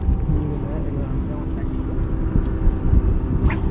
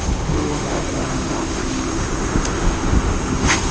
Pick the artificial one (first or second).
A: second